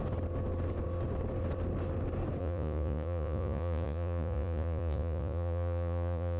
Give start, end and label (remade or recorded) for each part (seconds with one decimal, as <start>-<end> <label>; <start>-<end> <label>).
0.0-2.4 recorded; 2.4-6.4 remade